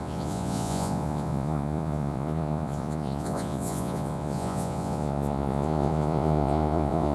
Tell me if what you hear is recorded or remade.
remade